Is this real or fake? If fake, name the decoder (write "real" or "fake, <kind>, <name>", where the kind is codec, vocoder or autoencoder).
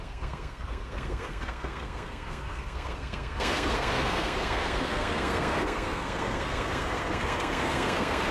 fake, codec, SNAC